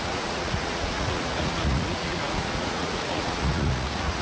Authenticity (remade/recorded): remade